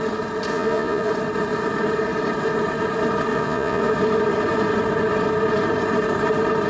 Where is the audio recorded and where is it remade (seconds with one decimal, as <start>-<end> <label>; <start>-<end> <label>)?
0.0-0.5 recorded; 0.5-1.1 remade; 1.1-3.3 recorded; 3.3-3.9 remade; 3.9-6.7 recorded